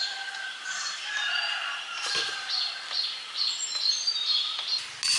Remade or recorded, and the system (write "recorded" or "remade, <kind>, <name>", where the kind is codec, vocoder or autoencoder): recorded